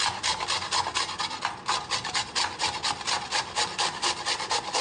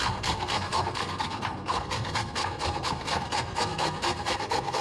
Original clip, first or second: first